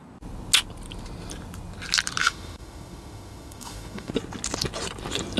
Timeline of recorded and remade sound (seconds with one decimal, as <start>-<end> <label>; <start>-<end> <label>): 0.0-2.2 recorded; 2.2-4.1 remade; 4.1-5.4 recorded